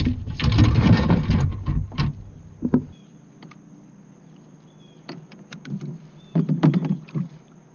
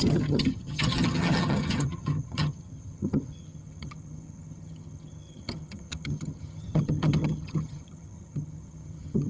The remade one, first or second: second